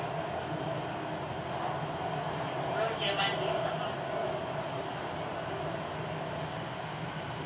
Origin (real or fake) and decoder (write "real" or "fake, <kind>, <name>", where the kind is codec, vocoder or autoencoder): real